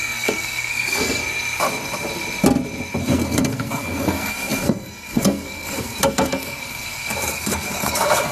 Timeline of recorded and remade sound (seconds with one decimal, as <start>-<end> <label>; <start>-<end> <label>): 0.0-1.2 remade; 1.2-3.0 recorded; 3.0-8.3 remade